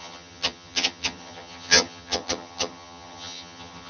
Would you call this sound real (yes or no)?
no